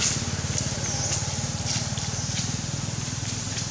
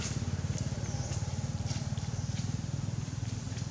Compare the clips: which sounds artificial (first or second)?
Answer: second